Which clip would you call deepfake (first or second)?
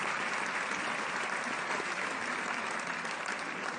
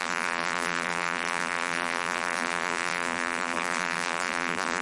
second